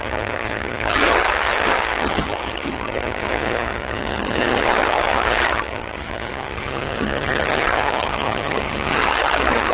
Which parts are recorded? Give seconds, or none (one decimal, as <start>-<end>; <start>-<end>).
none

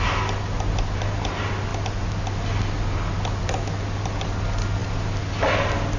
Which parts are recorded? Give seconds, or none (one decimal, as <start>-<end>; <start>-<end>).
0.0-6.0

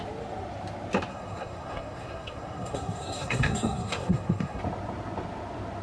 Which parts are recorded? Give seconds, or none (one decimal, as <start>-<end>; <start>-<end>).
0.0-1.1; 4.6-5.8

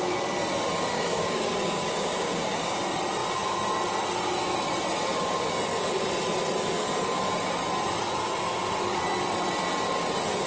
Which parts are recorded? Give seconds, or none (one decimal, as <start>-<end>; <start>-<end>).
0.0-0.9; 2.8-10.5